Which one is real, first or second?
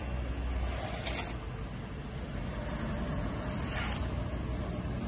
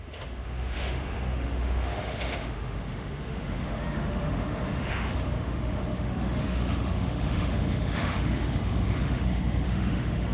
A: first